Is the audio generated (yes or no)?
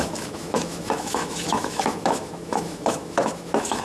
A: yes